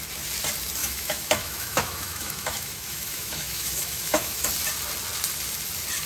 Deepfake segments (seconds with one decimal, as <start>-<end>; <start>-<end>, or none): 0.8-4.5